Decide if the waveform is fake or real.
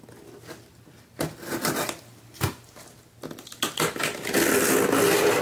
real